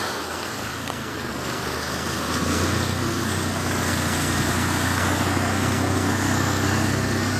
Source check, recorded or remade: remade